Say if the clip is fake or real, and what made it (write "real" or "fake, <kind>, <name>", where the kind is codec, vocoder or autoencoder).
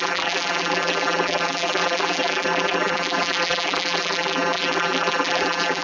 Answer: fake, vocoder, BigVGAN v2